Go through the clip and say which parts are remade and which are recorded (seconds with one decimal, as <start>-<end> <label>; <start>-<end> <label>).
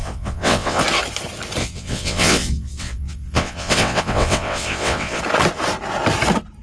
0.0-0.8 remade; 0.8-1.6 recorded; 1.6-5.2 remade; 5.2-6.6 recorded